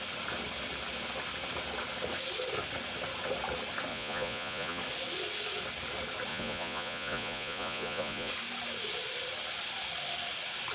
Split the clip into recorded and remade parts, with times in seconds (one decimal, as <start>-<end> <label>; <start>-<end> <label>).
0.0-3.9 recorded; 3.9-4.8 remade; 4.8-6.3 recorded; 6.3-8.3 remade; 8.3-10.7 recorded